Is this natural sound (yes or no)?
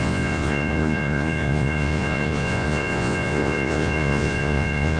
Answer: no